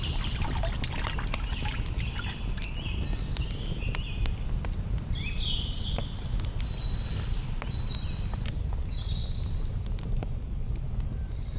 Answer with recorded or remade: recorded